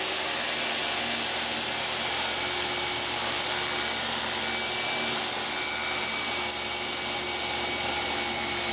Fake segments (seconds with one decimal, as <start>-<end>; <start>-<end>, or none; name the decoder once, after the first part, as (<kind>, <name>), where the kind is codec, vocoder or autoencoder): none